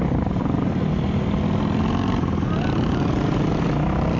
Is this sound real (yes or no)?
yes